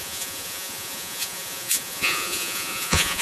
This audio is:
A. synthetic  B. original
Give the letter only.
A